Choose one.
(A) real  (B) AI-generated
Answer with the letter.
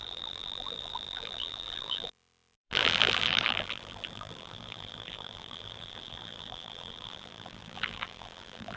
B